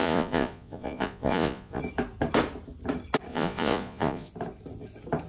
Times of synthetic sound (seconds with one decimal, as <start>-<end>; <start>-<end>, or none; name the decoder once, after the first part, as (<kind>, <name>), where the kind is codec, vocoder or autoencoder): 0.0-1.8 (vocoder, Vocos); 3.3-4.3